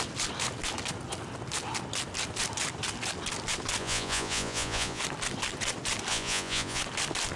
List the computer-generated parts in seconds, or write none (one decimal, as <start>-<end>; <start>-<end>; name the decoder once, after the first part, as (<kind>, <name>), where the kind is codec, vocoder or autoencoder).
3.8-5.0 (vocoder, Vocos); 6.1-6.8